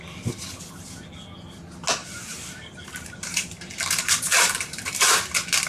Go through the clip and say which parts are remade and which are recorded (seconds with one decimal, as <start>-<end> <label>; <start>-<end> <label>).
0.0-2.0 recorded; 2.0-5.3 remade; 5.3-5.7 recorded